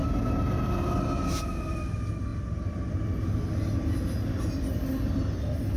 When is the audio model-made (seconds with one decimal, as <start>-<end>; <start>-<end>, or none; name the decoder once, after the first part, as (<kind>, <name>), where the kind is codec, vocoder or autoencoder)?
0.0-0.9 (vocoder, BigVGAN v2)